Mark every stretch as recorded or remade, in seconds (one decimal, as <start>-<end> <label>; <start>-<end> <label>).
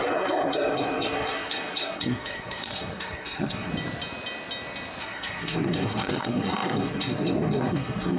0.0-3.7 remade; 3.7-5.0 recorded; 5.0-8.2 remade